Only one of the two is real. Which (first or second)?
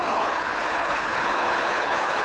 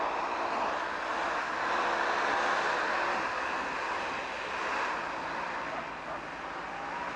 second